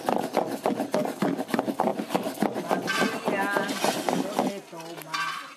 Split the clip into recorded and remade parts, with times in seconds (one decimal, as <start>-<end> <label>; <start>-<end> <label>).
0.0-5.6 recorded